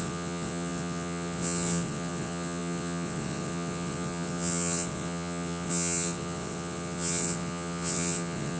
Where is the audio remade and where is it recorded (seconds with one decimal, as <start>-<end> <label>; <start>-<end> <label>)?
0.0-8.6 remade